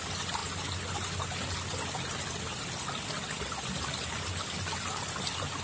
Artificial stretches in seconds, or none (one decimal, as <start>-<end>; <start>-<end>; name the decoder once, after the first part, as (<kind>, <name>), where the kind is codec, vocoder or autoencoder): none